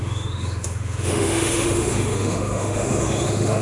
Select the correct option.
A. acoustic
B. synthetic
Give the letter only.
B